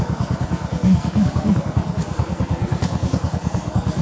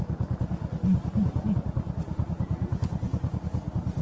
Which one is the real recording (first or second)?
second